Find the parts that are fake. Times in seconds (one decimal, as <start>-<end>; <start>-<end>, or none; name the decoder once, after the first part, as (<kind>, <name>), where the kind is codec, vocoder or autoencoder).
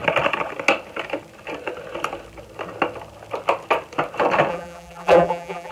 4.5-5.7 (vocoder, BigVGAN v2)